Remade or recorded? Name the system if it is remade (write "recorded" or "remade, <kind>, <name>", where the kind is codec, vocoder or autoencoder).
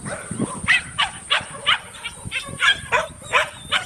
remade, vocoder, BigVGAN v2